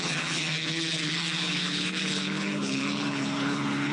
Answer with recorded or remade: remade